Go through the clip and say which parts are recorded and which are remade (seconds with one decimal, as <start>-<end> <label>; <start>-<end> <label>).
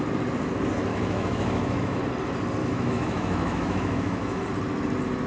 0.0-0.9 recorded; 0.9-2.0 remade; 2.0-2.6 recorded; 2.6-4.4 remade; 4.4-5.3 recorded